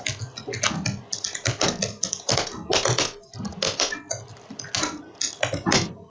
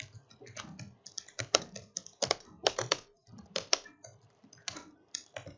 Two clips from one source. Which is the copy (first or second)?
second